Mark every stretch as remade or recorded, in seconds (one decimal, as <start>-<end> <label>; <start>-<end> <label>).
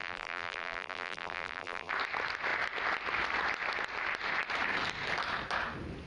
0.0-1.9 remade; 1.9-6.1 recorded